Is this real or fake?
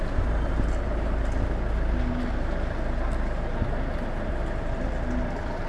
real